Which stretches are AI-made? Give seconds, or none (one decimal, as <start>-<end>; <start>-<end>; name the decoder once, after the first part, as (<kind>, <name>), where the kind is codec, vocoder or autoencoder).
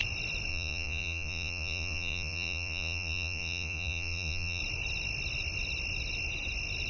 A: 0.5-4.6 (vocoder, Vocos)